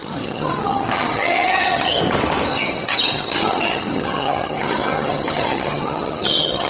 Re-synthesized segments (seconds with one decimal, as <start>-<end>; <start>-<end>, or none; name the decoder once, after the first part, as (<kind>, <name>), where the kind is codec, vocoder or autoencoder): 0.0-2.0 (vocoder, HiFi-GAN); 2.5-6.7

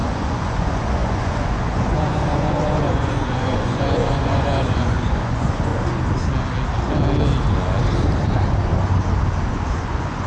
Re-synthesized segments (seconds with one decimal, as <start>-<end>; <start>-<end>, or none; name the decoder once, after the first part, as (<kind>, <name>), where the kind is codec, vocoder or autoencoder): 0.0-5.7 (vocoder, Vocos); 9.5-10.3

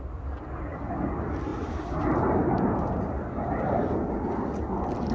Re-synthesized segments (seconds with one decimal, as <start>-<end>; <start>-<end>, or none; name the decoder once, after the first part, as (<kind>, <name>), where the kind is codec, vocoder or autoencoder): none

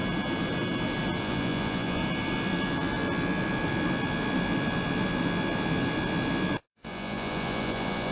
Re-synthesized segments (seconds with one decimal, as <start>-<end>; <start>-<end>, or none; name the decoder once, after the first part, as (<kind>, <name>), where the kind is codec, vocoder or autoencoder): 1.2-2.0 (vocoder, Vocos); 6.7-8.1

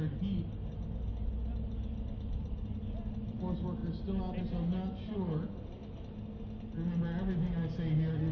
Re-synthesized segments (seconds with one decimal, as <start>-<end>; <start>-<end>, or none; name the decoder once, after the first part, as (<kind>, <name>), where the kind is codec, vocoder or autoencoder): none

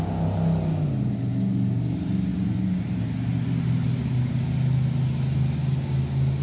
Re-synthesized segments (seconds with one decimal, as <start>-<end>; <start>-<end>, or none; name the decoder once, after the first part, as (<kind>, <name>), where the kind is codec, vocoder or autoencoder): 2.3-3.0 (vocoder, BigVGAN v2)